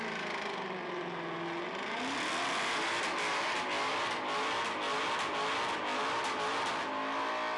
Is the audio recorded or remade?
recorded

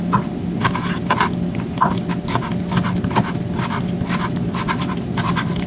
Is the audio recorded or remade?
recorded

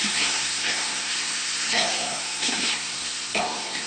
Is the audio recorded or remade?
remade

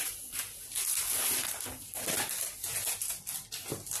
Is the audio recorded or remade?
recorded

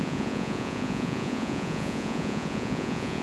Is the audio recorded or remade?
remade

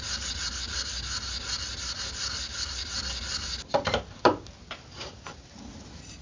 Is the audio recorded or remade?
recorded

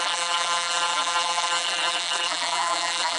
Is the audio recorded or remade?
remade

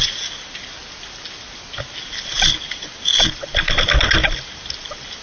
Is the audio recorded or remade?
recorded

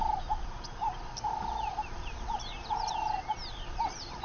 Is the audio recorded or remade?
recorded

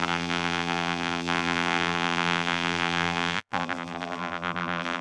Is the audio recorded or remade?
remade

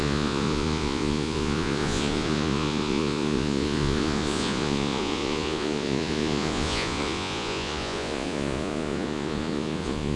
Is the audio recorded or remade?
remade